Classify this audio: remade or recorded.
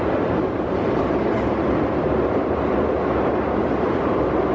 recorded